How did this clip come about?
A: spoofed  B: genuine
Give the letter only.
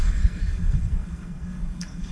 A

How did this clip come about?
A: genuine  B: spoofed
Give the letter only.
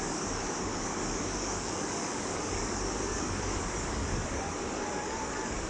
B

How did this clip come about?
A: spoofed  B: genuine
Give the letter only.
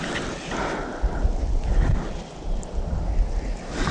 B